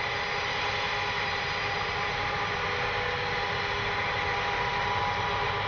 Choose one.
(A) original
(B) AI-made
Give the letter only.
A